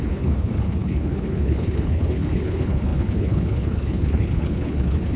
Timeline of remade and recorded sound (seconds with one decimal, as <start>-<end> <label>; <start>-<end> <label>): 0.0-5.2 remade